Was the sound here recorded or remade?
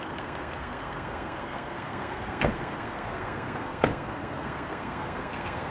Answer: remade